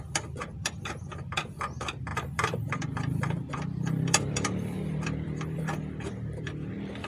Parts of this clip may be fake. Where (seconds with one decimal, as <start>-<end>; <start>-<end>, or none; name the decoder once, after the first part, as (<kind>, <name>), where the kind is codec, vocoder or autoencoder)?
0.0-7.1 (vocoder, BigVGAN v2)